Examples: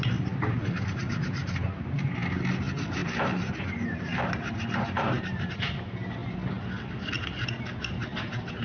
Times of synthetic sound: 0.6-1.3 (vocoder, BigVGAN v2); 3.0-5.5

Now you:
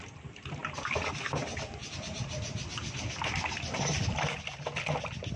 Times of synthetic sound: 1.8-5.0 (vocoder, BigVGAN v2)

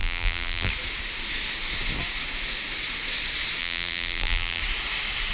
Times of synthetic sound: 0.0-0.7 (vocoder, BigVGAN v2); 3.6-4.6

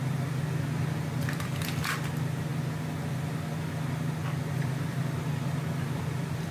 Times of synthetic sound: 0.0-2.5 (vocoder, BigVGAN v2); 4.5-6.5